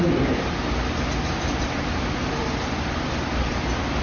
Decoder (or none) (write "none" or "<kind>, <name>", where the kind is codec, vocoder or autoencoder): none